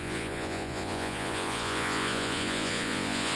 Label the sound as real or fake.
fake